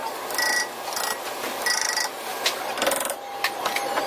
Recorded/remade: recorded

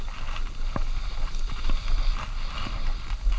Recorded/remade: recorded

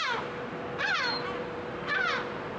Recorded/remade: recorded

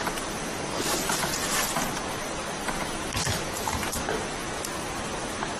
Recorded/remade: remade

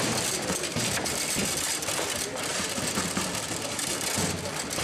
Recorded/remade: remade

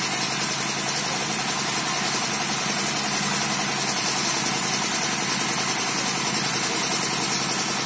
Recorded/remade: recorded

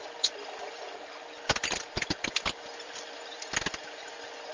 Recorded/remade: recorded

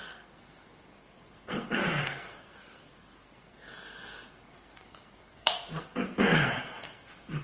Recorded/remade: remade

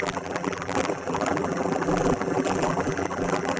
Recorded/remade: remade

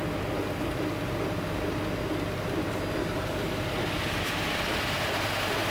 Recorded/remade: recorded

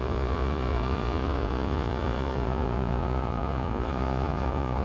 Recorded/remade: remade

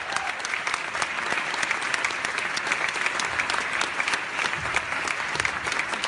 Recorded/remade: recorded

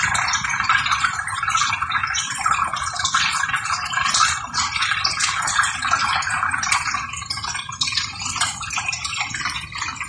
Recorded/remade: remade